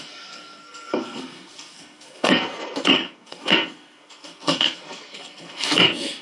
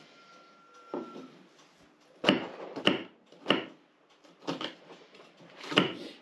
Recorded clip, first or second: second